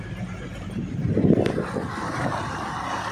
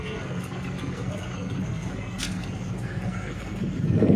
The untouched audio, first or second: first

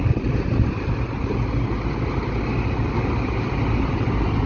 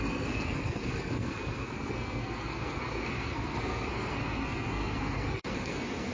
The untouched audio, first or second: first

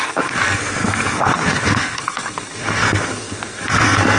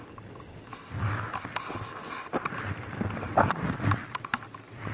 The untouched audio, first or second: second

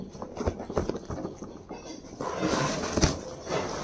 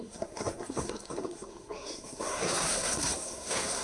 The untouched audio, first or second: first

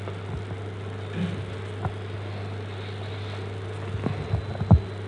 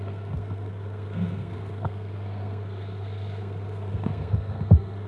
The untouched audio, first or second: first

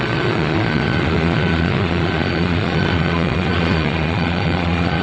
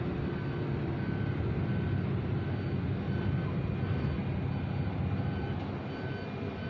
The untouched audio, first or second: second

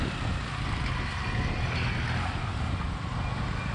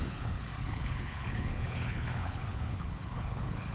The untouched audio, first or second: first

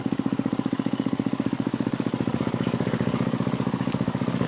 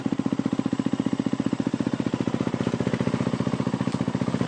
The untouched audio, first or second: second